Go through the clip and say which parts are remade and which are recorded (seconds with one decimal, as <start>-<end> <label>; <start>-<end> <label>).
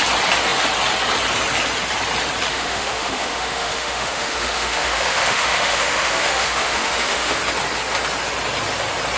0.0-2.5 recorded; 2.5-7.4 remade; 7.4-9.2 recorded